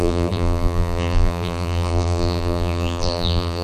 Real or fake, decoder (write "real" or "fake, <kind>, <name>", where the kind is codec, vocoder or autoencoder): fake, vocoder, BigVGAN v2